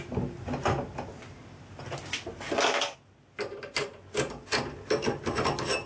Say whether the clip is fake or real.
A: real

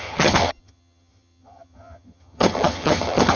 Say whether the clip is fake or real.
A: fake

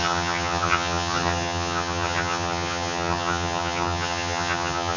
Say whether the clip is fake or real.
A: fake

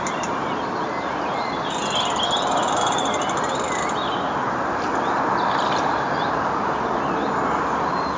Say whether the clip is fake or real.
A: real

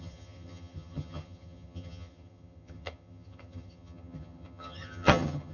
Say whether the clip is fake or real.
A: fake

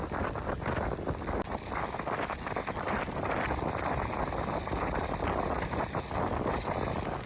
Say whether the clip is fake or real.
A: real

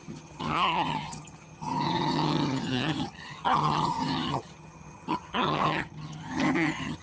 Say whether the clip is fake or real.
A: fake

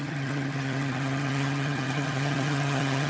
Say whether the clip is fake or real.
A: fake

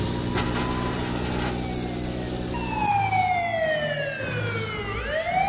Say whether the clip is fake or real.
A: real